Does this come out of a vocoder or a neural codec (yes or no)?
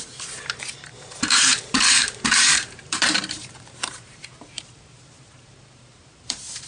yes